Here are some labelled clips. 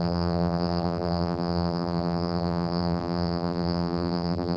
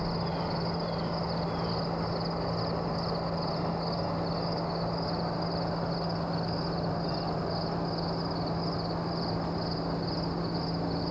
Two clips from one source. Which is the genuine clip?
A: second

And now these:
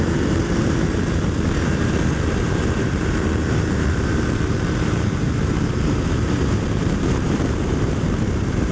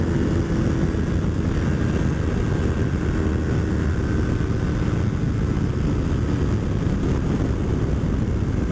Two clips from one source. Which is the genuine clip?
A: second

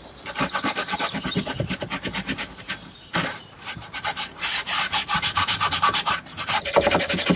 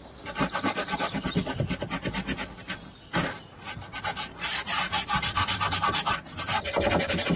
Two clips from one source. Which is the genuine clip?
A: second